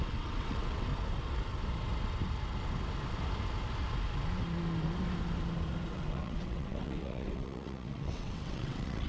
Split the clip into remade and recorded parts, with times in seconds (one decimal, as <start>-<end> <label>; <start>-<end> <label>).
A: 0.0-0.9 remade; 0.9-5.9 recorded; 5.9-9.1 remade